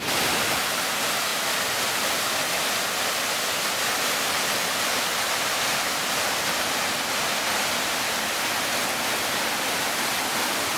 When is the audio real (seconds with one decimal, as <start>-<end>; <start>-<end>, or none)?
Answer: 0.0-10.8